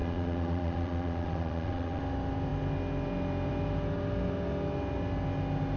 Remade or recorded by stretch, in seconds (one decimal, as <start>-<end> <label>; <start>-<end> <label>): 0.0-2.0 remade; 2.0-5.8 recorded